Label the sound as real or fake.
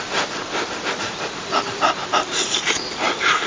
fake